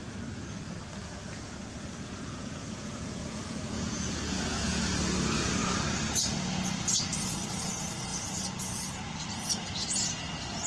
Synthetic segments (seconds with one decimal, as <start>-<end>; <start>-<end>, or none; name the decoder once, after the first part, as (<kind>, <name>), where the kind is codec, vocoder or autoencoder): 1.0-4.8 (vocoder, Vocos)